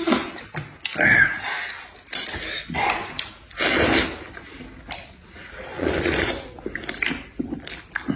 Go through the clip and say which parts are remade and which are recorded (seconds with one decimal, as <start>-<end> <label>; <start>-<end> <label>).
0.0-2.6 recorded; 2.6-3.1 remade; 3.1-5.7 recorded; 5.7-6.6 remade; 6.6-8.2 recorded